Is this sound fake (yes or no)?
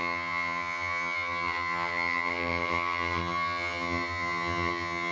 yes